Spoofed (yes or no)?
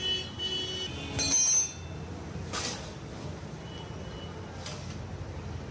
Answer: no